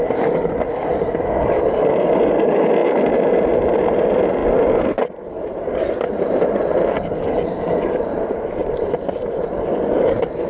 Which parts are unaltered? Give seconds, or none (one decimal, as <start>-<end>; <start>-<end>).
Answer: 0.0-10.5